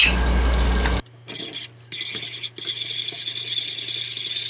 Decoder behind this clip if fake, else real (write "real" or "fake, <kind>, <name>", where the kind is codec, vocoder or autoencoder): real